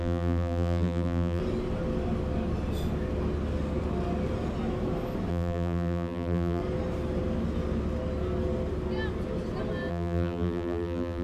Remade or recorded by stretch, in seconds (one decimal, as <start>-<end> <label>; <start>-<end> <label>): 0.0-1.4 remade; 1.4-5.3 recorded; 5.3-6.6 remade; 6.6-9.9 recorded; 9.9-11.2 remade